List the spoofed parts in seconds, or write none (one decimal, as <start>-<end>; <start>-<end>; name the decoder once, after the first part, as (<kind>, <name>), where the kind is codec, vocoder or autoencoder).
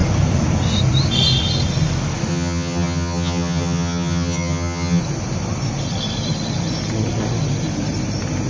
2.3-5.0 (vocoder, HiFi-GAN)